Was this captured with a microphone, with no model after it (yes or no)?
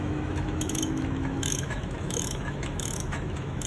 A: no